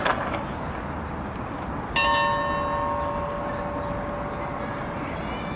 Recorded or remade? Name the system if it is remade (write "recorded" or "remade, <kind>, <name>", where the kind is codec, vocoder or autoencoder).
recorded